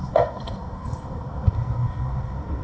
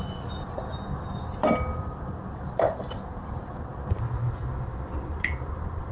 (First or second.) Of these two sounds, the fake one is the first